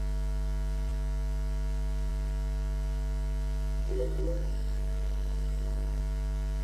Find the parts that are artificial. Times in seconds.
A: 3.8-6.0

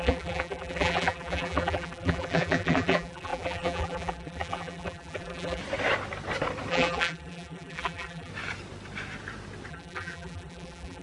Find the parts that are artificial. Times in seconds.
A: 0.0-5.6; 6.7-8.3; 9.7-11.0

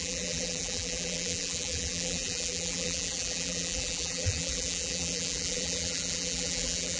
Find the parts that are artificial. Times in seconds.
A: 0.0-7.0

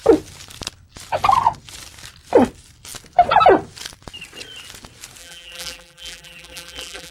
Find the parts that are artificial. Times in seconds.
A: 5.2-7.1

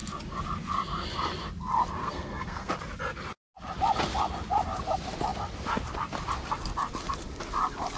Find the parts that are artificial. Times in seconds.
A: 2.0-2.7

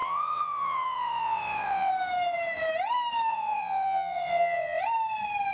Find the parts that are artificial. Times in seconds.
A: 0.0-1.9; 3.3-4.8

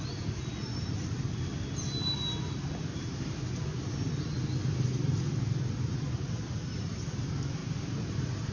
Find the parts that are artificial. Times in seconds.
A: 2.9-3.4; 7.6-8.5

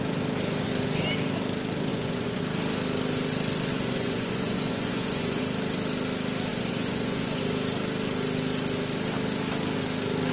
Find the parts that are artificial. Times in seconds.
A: 1.9-2.4; 3.7-5.4; 6.5-7.4